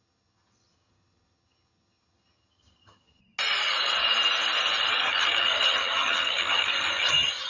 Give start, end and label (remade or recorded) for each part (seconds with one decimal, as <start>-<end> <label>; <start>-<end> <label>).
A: 0.0-3.2 remade; 3.2-4.9 recorded; 4.9-7.5 remade